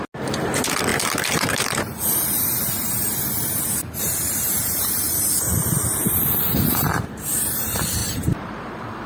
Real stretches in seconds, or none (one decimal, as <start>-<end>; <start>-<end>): 0.0-0.9; 6.1-8.0